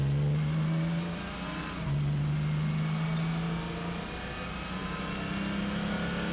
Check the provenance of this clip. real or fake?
real